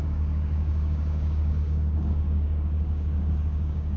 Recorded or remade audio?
remade